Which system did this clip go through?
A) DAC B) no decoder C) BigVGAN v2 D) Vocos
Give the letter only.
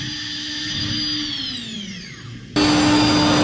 B